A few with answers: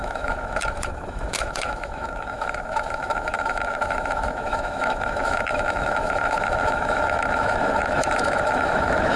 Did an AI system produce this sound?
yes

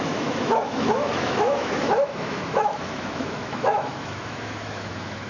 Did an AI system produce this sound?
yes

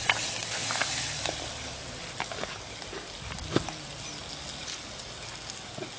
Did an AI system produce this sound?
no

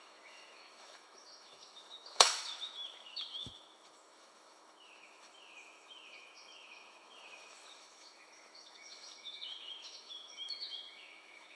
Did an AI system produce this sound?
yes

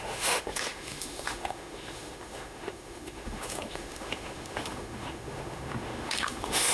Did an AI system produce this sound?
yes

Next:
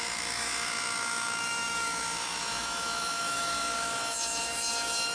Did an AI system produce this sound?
yes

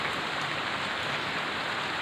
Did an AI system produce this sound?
no